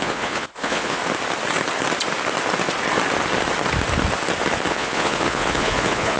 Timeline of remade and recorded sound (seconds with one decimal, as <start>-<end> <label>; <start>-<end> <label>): 0.0-1.0 remade; 1.0-4.7 recorded; 4.7-6.2 remade